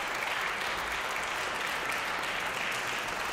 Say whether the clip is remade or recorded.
recorded